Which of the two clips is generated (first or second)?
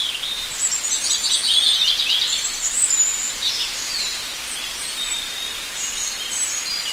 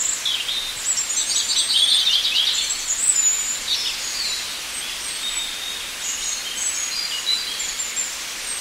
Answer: first